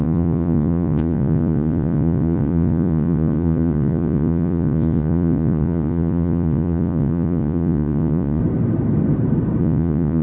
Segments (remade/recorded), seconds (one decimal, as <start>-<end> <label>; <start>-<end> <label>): 0.0-8.4 remade; 8.4-9.6 recorded; 9.6-10.2 remade